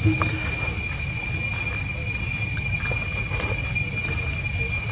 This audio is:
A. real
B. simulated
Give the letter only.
A